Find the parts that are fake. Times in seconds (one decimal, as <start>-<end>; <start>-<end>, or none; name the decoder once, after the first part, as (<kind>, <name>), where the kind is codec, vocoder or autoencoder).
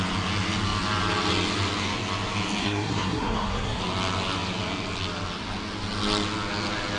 2.6-3.8 (codec, SNAC)